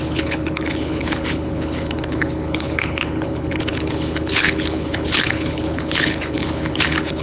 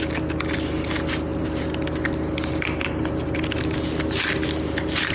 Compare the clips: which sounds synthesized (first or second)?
first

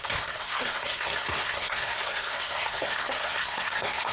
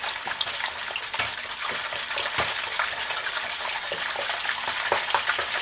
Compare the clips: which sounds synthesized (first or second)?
first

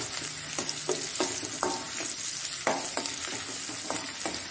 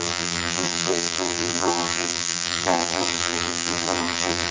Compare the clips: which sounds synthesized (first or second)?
second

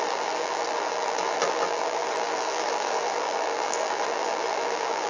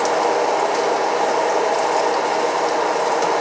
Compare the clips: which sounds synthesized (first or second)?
first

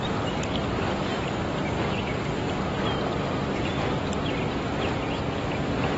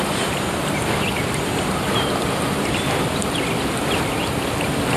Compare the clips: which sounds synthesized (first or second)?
second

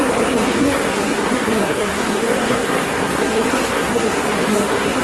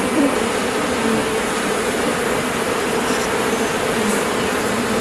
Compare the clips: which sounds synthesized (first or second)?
first